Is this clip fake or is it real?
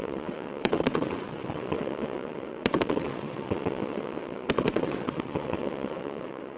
fake